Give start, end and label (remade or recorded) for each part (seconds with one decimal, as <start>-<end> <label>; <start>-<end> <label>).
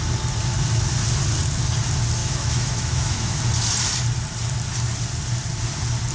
0.0-2.2 recorded; 2.2-3.4 remade; 3.4-6.1 recorded